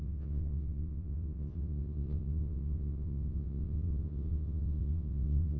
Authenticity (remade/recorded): remade